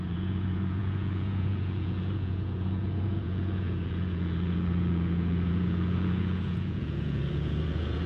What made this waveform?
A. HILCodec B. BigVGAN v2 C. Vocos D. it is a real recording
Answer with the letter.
C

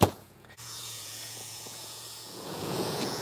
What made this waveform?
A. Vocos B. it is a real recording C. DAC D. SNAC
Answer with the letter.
A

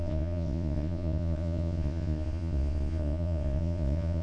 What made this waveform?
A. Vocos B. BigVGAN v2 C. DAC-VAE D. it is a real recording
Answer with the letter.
A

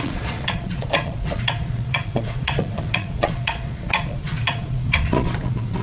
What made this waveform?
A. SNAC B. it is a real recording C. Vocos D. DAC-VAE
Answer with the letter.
C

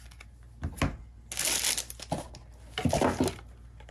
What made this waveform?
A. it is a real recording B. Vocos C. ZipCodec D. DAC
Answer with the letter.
A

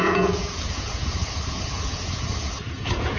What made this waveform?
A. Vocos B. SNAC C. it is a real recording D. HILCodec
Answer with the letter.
A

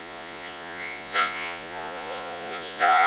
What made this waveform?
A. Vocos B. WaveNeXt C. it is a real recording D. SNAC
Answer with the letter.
A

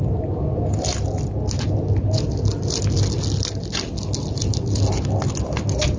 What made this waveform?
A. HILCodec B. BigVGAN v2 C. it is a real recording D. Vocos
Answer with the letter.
C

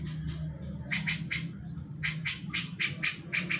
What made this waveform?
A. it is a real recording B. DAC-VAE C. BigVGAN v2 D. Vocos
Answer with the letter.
A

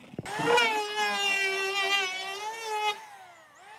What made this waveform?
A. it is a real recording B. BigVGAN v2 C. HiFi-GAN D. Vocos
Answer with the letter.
A